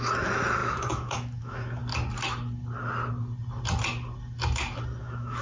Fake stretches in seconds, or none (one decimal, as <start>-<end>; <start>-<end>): 0.0-1.8; 5.0-5.4